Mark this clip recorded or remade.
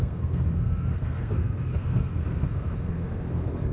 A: remade